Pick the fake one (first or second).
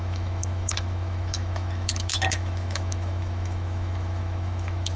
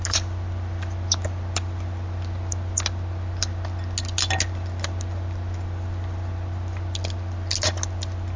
first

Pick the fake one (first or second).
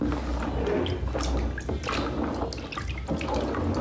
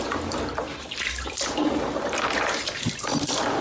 second